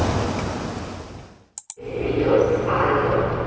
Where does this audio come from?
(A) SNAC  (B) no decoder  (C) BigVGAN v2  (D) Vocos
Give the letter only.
B